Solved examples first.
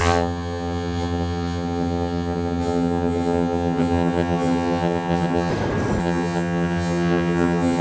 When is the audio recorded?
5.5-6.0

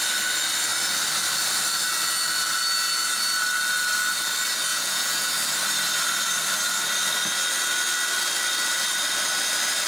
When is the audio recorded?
0.0-4.7; 5.3-9.9

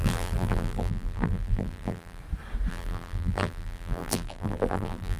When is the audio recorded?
2.2-2.7

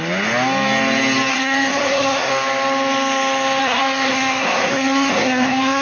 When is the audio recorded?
0.0-1.3; 2.3-3.6

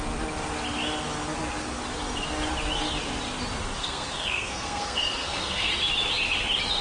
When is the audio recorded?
0.0-3.8; 5.7-6.8